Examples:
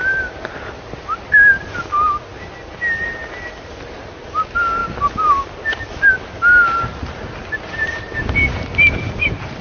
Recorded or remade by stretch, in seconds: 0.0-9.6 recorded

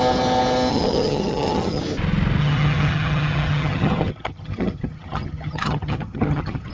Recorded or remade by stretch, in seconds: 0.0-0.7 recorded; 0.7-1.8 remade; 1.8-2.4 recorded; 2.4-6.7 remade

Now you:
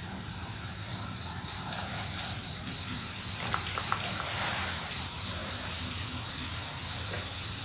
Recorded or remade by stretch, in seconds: 0.0-7.6 recorded

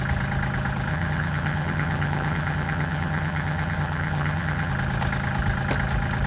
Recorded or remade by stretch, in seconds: 0.0-0.9 recorded; 0.9-4.7 remade; 4.7-6.3 recorded

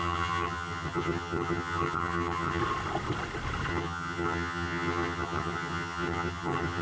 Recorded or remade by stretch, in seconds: 0.0-2.6 remade; 2.6-3.7 recorded; 3.7-6.8 remade